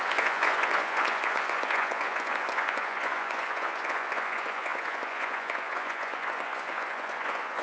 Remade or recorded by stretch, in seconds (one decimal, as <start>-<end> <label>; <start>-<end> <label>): 0.0-7.6 remade